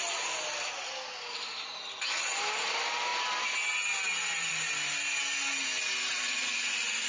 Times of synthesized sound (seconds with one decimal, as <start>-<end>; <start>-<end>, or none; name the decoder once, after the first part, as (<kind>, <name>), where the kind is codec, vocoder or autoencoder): 6.1-7.1 (vocoder, Vocos)